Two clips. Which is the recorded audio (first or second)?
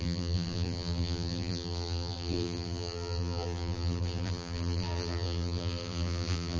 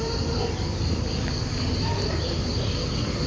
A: second